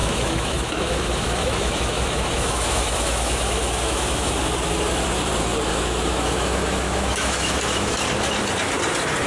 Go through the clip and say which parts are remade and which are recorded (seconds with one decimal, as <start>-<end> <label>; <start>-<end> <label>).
0.0-4.3 remade; 4.3-5.7 recorded; 5.7-8.0 remade; 8.0-9.3 recorded